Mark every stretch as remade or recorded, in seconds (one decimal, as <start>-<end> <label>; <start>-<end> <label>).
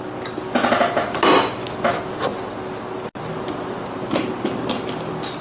0.0-5.4 recorded